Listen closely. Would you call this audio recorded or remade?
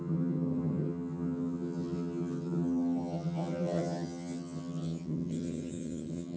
remade